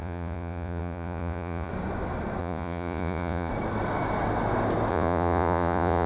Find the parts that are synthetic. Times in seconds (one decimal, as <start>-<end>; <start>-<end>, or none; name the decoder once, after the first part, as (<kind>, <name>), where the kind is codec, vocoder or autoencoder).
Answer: 0.0-1.7 (vocoder, Vocos); 2.4-3.5; 4.9-6.1